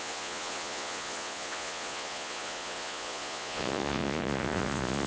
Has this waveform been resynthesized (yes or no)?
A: yes